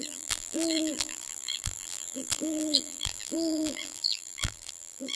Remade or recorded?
remade